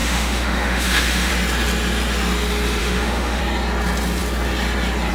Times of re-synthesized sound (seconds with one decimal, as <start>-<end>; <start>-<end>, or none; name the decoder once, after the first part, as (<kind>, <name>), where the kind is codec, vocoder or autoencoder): 0.0-1.3 (autoencoder, DAC-VAE); 2.8-3.4